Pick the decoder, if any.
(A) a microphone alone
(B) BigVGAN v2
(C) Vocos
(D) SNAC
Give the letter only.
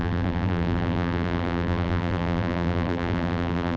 B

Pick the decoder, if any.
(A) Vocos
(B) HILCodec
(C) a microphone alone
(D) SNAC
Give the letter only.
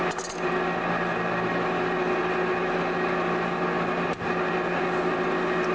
C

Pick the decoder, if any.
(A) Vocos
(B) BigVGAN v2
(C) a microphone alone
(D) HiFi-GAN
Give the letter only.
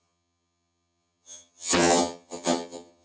D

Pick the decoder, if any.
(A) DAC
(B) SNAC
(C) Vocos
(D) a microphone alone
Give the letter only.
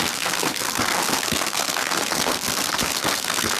B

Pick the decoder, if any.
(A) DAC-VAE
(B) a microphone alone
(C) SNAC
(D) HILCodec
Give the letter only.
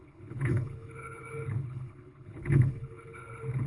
D